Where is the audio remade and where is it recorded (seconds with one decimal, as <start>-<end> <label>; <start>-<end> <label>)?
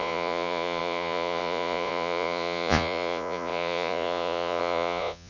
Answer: 0.0-5.3 remade